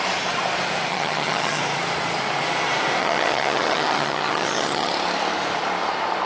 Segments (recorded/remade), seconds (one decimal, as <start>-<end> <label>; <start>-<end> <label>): 0.0-0.9 recorded; 0.9-1.6 remade; 1.6-3.0 recorded; 3.0-4.9 remade; 4.9-6.3 recorded